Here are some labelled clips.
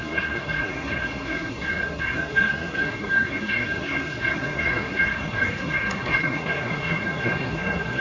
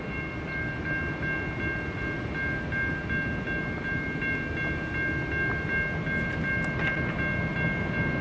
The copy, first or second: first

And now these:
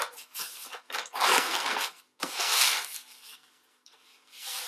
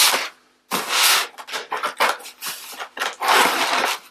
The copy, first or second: first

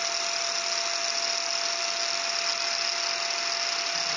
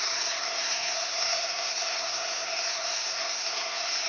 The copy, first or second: second